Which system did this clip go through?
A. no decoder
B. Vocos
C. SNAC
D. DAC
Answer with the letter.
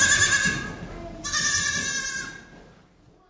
A